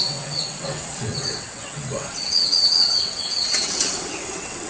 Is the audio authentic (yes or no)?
no